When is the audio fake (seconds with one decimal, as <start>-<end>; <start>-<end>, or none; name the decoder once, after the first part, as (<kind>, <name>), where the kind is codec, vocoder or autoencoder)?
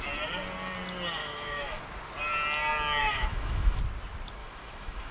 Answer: 1.2-1.8 (autoencoder, DAC-VAE); 3.0-3.8; 4.4-5.1